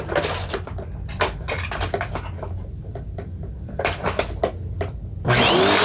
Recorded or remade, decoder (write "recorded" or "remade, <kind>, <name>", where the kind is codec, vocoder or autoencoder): recorded